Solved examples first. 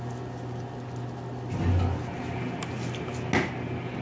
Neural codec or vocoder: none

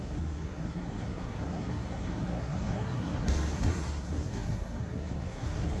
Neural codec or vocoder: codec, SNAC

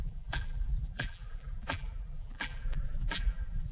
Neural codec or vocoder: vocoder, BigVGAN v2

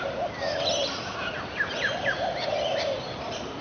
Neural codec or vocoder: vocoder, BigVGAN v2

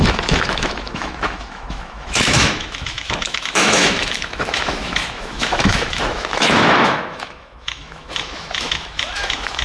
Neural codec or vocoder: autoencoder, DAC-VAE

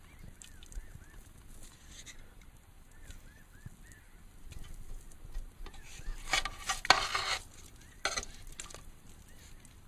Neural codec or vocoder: none